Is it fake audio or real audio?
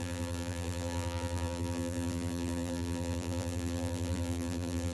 fake